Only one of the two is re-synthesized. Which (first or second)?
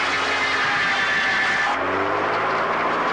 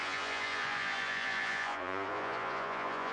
second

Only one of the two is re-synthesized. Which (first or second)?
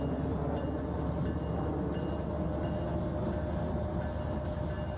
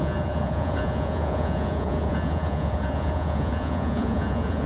second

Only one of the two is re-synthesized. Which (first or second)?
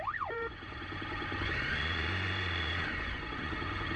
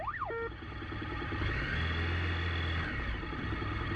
first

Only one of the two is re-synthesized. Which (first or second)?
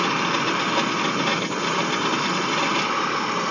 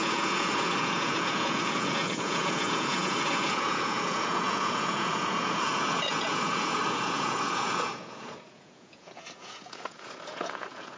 second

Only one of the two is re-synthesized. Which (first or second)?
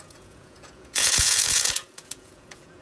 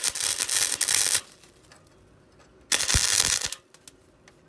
first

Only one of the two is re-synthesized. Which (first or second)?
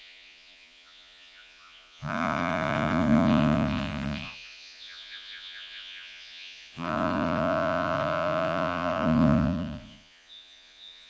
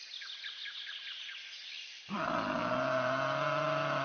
first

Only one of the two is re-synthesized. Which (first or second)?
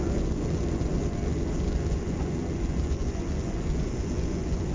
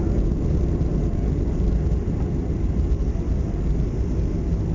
first